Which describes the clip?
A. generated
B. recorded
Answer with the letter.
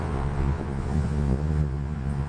A